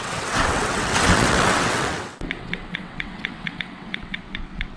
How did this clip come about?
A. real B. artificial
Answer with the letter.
B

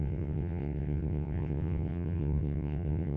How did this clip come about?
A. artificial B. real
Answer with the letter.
A